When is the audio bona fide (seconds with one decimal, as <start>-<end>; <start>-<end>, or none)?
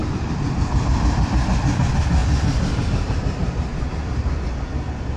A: 0.8-3.7; 4.3-5.2